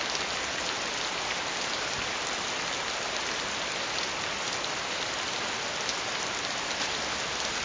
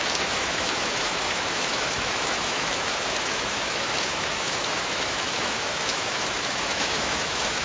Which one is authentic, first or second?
first